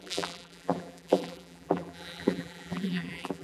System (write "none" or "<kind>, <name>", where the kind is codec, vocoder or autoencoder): vocoder, BigVGAN v2